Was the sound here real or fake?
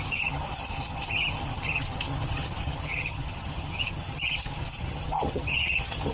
fake